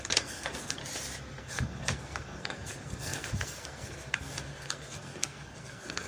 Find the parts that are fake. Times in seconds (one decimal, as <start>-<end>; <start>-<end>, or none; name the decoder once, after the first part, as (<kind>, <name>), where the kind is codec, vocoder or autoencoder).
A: 0.0-0.8 (codec, SNAC); 1.4-6.1

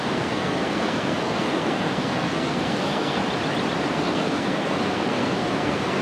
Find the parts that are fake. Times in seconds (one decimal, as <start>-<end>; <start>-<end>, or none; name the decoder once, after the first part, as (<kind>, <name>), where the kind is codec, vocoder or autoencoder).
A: 0.0-3.2 (codec, SNAC); 3.9-6.0

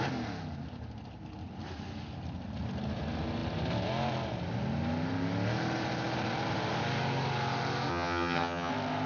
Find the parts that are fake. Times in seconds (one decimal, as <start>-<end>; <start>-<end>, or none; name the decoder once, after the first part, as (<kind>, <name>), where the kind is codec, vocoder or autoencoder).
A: 7.9-8.7 (vocoder, HiFi-GAN)

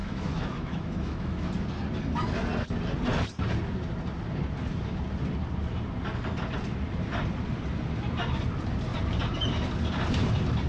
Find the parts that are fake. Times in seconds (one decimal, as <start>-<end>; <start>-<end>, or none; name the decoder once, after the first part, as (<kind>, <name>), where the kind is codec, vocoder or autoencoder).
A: 0.0-1.5 (autoencoder, DAC-VAE)

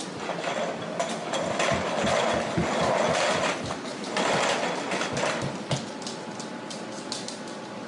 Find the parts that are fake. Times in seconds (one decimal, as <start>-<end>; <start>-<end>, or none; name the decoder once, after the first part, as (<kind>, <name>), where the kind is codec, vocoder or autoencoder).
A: none

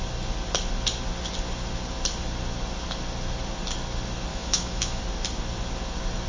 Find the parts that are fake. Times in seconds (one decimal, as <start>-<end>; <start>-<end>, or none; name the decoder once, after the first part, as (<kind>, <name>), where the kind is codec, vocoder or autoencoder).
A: 4.3-5.0 (autoencoder, DAC-VAE)

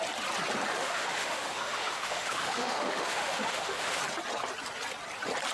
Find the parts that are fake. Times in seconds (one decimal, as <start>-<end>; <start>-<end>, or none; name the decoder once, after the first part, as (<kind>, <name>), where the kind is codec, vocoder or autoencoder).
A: 0.7-4.0 (autoencoder, DAC-VAE)